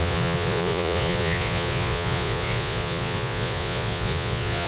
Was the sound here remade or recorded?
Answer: remade